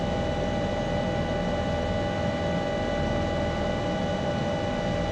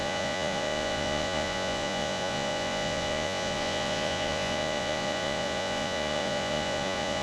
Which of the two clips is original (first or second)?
first